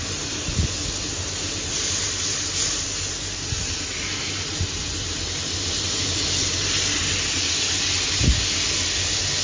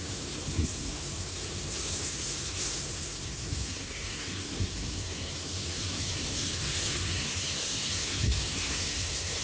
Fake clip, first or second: second